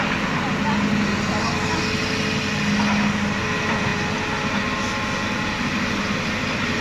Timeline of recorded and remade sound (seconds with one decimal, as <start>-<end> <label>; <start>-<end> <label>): 0.0-6.8 recorded